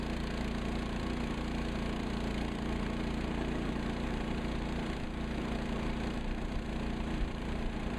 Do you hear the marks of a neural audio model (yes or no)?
yes